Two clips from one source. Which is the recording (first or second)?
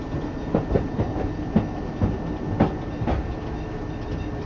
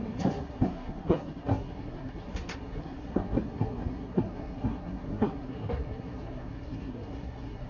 first